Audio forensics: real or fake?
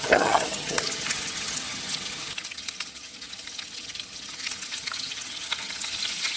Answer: fake